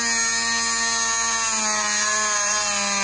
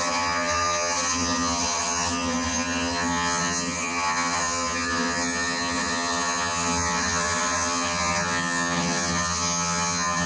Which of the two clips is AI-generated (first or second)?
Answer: second